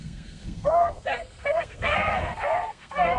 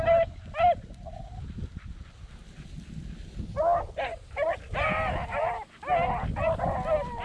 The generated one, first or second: first